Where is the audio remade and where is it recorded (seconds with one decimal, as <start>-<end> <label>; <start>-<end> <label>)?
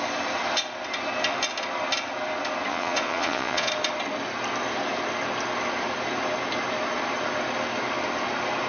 0.0-2.7 recorded; 2.7-3.7 remade; 3.7-8.7 recorded